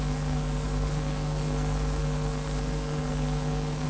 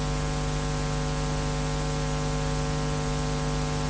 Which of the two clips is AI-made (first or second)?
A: first